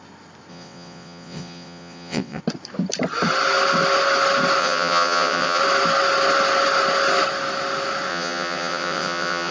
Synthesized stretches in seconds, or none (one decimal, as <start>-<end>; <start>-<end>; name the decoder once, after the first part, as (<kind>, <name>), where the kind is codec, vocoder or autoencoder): 0.5-2.4 (vocoder, WaveNeXt); 4.6-5.6; 8.1-9.5